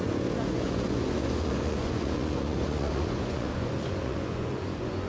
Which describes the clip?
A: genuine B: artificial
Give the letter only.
B